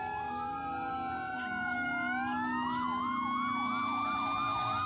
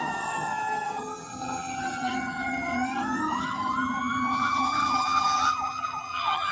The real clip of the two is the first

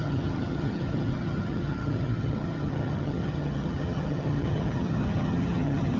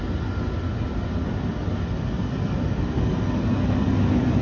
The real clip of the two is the second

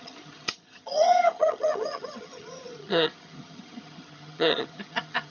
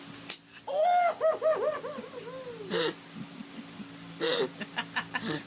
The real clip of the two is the second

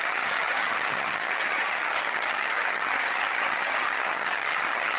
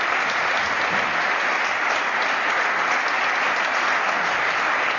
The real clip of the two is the second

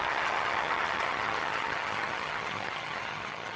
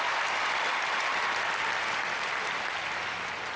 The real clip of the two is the second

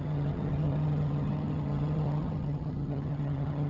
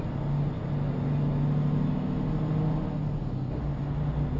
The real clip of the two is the second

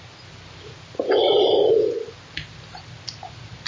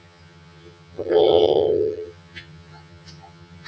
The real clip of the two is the first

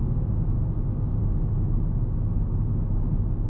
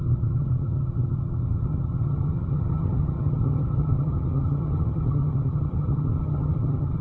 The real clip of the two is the first